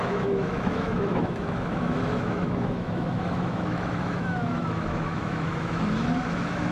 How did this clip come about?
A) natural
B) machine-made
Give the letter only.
B